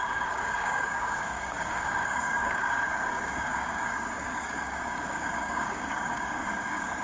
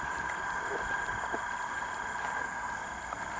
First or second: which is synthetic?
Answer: first